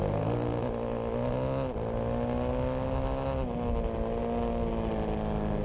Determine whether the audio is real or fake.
real